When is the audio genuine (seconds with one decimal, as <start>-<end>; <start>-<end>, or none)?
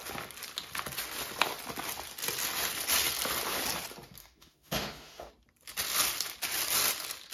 0.0-4.2; 5.3-7.3